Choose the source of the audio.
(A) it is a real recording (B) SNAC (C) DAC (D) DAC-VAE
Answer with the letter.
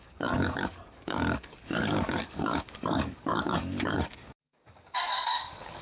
C